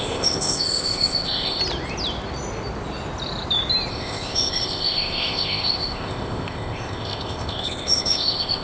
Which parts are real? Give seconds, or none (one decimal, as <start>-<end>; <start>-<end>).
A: 1.6-3.9